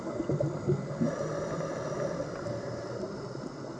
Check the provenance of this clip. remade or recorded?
recorded